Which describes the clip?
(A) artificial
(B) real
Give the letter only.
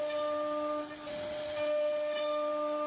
B